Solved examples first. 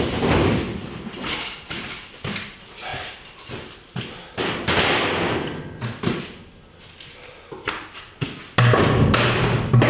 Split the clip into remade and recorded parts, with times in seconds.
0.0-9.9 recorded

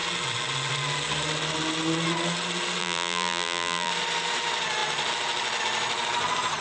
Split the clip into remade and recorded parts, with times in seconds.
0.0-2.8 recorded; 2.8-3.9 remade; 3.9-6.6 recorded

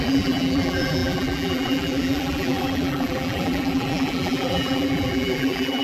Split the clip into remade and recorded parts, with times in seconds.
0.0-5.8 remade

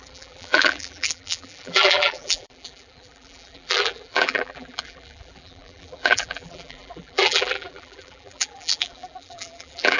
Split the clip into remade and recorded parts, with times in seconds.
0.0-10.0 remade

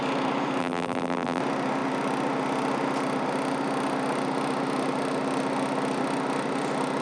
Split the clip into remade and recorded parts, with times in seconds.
0.0-0.6 recorded; 0.6-1.4 remade; 1.4-7.0 recorded